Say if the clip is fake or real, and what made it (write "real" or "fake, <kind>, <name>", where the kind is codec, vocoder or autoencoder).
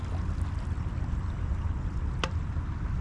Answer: real